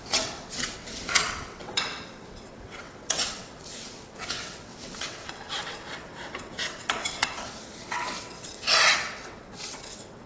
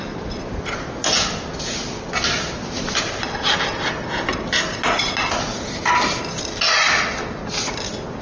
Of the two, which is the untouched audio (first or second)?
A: second